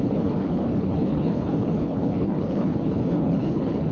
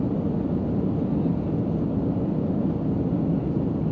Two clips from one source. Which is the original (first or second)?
second